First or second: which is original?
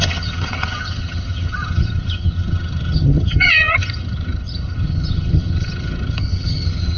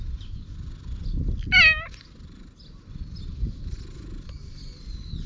second